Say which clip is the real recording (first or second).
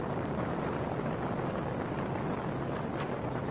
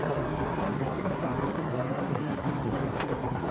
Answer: first